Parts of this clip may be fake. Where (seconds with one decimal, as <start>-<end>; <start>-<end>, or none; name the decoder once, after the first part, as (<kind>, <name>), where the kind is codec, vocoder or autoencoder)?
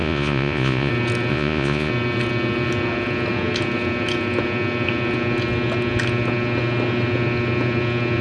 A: 0.0-0.9 (vocoder, Vocos); 1.3-1.9